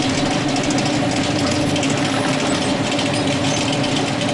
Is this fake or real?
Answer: real